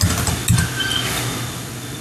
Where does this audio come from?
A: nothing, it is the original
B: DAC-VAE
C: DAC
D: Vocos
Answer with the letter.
A